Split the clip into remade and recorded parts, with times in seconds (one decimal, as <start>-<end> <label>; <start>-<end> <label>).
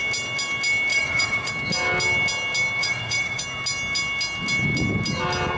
0.0-0.9 recorded; 0.9-1.5 remade; 1.5-2.8 recorded; 2.8-3.4 remade; 3.4-5.6 recorded